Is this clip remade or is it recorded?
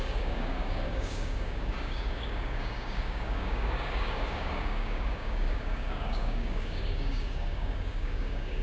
remade